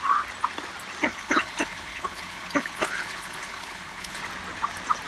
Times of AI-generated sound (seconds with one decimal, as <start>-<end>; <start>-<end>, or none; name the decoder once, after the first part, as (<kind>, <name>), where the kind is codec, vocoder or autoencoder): 1.1-4.2 (codec, HILCodec)